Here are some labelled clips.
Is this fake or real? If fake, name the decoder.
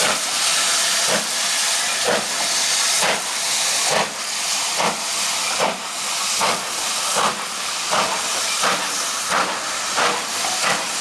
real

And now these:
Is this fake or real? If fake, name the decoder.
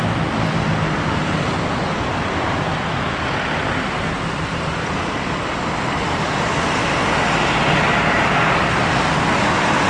real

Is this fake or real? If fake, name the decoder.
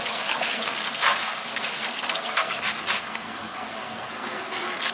fake, codec, SNAC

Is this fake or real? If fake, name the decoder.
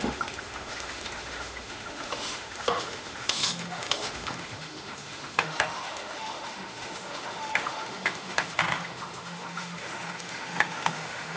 fake, autoencoder, DAC-VAE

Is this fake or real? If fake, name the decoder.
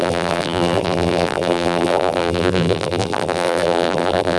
fake, vocoder, BigVGAN v2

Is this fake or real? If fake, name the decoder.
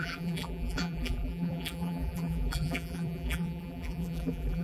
fake, vocoder, BigVGAN v2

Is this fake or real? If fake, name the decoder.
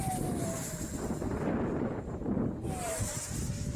fake, vocoder, BigVGAN v2